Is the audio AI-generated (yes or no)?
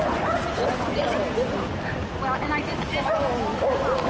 no